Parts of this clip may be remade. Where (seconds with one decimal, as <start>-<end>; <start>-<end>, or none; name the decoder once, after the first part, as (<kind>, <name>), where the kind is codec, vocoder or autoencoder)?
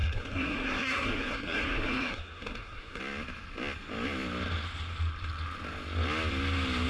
0.0-3.0 (codec, SNAC)